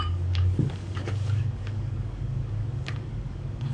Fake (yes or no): yes